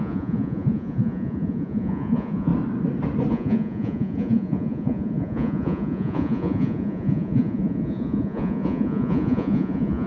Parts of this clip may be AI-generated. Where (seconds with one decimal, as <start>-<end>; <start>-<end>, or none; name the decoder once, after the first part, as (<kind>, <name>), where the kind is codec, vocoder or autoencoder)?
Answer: 0.0-2.5 (vocoder, Vocos); 3.3-10.1